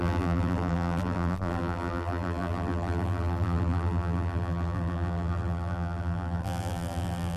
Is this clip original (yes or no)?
no